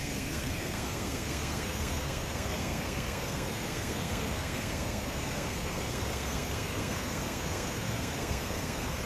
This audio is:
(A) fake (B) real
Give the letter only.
A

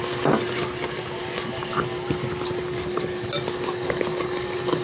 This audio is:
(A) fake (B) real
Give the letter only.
B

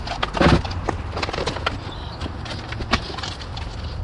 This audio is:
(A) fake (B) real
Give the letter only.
B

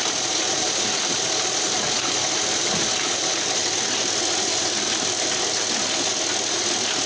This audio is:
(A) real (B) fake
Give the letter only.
A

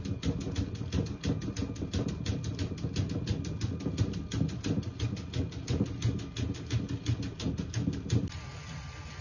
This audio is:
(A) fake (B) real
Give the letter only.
B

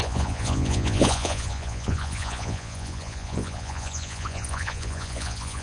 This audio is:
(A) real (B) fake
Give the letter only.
B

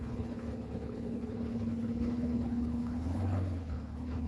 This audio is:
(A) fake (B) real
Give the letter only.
A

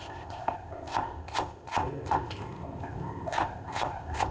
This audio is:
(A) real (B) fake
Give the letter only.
B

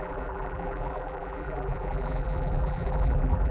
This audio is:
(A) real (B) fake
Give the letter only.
B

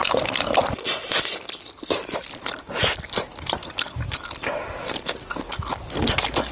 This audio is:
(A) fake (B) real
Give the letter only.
B